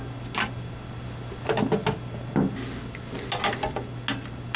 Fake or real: real